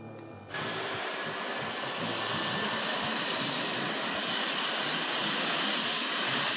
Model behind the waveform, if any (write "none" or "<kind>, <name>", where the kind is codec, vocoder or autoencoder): none